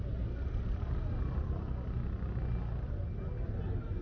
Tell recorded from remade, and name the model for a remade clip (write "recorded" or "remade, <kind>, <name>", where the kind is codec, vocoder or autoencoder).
recorded